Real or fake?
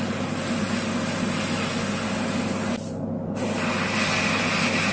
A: real